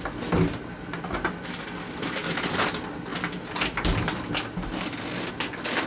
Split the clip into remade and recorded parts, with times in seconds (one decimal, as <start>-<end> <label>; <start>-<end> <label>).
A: 0.0-5.9 recorded